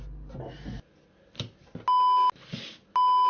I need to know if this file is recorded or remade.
recorded